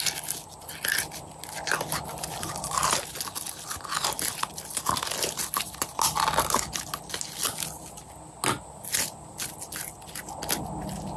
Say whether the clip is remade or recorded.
recorded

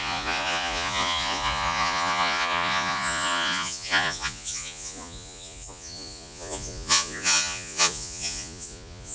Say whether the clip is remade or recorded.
remade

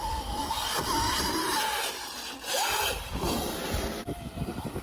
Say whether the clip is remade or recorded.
recorded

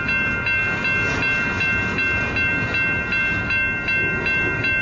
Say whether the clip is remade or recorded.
recorded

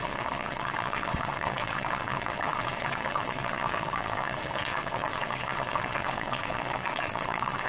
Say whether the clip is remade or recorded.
remade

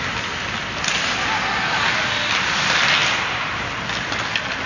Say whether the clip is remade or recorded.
recorded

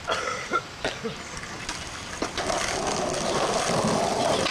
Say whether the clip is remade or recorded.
remade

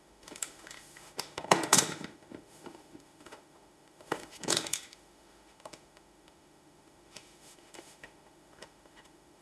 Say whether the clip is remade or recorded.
remade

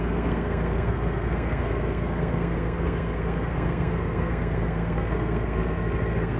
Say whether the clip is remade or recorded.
remade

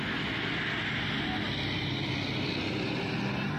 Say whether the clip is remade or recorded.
recorded